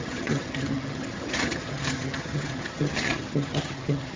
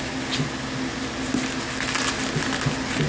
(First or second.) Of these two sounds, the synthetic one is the first